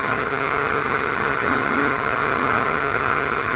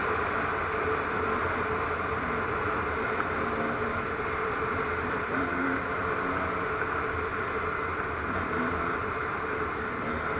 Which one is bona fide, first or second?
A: second